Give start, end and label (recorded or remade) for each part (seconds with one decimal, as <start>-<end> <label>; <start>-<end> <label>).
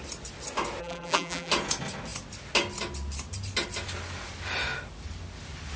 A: 0.0-0.8 recorded; 0.8-1.5 remade; 1.5-5.8 recorded